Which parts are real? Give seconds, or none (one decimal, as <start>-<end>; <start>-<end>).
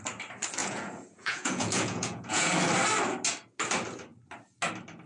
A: 0.0-0.6; 2.5-5.1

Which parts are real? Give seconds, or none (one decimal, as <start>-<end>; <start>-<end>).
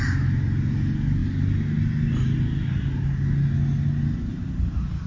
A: 0.0-5.1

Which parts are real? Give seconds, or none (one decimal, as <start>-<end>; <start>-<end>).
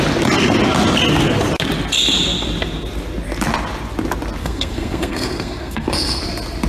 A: 0.0-4.4; 6.2-6.7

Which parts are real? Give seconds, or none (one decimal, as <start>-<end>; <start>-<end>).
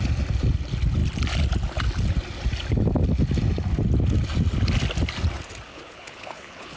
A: 0.0-5.7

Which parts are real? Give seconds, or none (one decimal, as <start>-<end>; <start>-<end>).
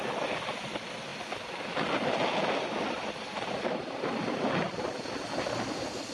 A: 0.0-6.1